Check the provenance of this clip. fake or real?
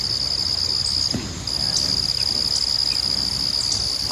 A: real